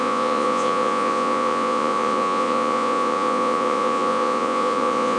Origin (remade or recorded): remade